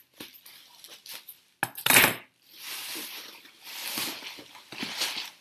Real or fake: real